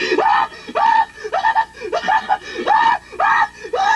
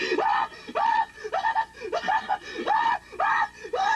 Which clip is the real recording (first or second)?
first